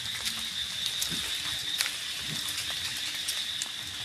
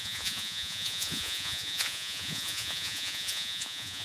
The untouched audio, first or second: first